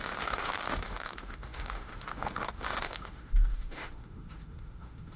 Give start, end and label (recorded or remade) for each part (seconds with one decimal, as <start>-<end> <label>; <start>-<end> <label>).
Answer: 0.0-5.2 remade

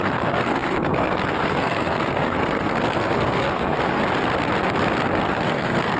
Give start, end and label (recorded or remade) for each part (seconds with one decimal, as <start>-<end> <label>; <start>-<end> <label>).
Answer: 0.0-4.0 remade; 4.0-5.2 recorded; 5.2-6.0 remade

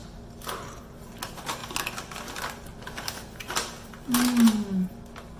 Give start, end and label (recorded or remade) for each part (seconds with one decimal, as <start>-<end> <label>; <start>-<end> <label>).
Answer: 0.0-5.4 recorded

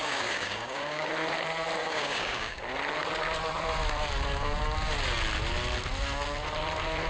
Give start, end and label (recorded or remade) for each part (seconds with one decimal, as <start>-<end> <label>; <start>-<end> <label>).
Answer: 0.0-1.1 remade; 1.1-1.8 recorded; 1.8-2.6 remade; 2.6-7.1 recorded

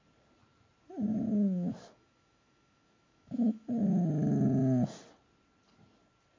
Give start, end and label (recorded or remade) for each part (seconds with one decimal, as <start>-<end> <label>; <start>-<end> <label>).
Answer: 0.0-1.1 recorded; 1.1-3.9 remade; 3.9-6.4 recorded

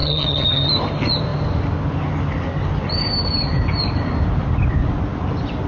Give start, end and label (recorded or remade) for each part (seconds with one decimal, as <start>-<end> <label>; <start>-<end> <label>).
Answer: 0.0-0.7 remade; 0.7-5.7 recorded

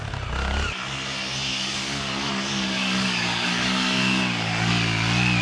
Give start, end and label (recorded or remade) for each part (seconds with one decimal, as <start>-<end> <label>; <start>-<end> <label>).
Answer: 0.0-1.5 recorded; 1.5-4.7 remade; 4.7-5.4 recorded

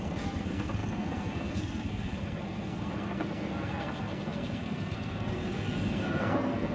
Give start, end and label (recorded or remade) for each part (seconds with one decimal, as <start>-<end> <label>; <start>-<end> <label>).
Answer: 0.0-6.7 remade